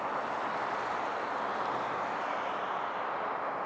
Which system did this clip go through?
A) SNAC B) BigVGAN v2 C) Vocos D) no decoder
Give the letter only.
D